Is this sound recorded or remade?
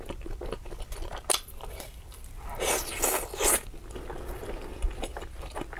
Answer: recorded